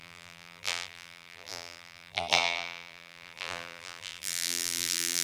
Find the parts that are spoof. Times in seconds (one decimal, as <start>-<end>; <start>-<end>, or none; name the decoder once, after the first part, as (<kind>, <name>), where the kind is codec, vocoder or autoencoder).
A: 0.0-5.2 (vocoder, BigVGAN v2)